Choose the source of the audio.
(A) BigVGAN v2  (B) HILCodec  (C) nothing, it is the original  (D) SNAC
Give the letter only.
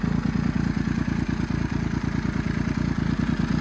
C